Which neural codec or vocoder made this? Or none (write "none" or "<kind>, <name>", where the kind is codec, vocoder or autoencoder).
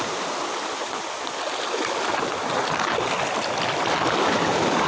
none